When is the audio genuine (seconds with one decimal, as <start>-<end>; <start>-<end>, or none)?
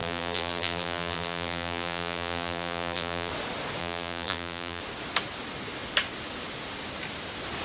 3.3-3.8; 4.8-7.6